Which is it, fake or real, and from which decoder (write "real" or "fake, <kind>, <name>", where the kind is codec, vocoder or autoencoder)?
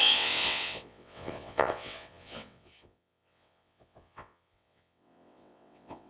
fake, vocoder, WaveNeXt